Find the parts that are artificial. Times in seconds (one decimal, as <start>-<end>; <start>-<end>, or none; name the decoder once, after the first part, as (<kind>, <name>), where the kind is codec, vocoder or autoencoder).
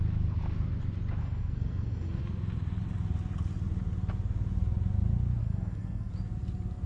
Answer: 1.2-2.2 (codec, SNAC); 5.4-6.1